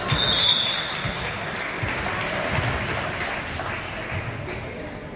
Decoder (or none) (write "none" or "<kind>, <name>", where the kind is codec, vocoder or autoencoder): none